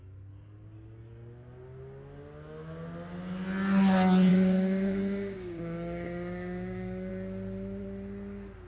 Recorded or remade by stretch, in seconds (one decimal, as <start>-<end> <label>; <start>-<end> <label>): 0.0-4.3 recorded; 4.3-7.1 remade; 7.1-8.7 recorded